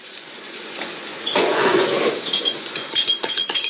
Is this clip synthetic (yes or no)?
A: yes